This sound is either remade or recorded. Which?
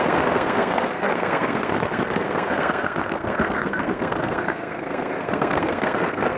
remade